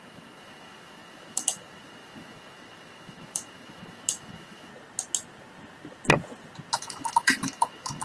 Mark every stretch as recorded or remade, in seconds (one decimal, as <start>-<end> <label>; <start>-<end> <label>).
0.0-4.7 remade; 4.7-6.7 recorded; 6.7-8.0 remade

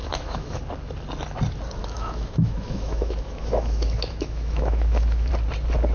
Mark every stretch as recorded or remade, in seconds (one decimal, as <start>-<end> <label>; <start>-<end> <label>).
0.0-0.6 remade; 0.6-1.8 recorded; 1.8-5.3 remade; 5.3-5.9 recorded